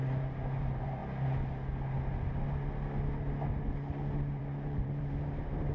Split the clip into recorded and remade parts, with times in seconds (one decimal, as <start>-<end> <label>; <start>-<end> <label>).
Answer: 0.0-1.0 remade; 1.0-4.4 recorded; 4.4-5.7 remade